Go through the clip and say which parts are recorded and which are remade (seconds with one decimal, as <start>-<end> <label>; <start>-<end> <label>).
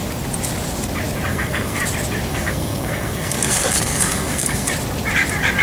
0.0-1.3 recorded; 1.3-1.8 remade; 1.8-2.3 recorded; 2.3-4.7 remade; 4.7-5.6 recorded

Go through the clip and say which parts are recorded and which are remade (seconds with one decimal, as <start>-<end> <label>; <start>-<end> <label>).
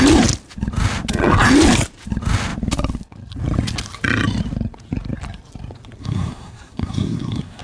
0.0-6.0 recorded; 6.0-7.6 remade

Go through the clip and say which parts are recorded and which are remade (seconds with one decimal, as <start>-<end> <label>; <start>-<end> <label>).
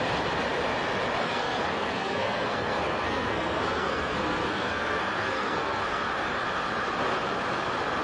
0.0-1.2 recorded; 1.2-6.0 remade; 6.0-8.0 recorded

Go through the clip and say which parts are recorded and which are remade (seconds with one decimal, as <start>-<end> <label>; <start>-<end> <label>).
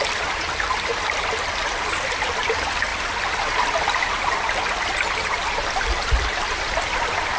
0.0-7.4 recorded